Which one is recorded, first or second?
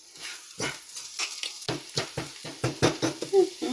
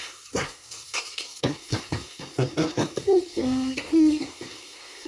first